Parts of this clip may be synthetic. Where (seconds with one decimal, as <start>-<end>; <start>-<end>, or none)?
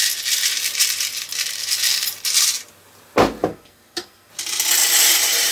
3.5-4.3